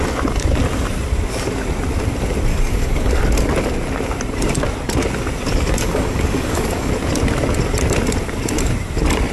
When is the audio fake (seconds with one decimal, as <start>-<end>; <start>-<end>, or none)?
2.5-3.2; 5.5-6.9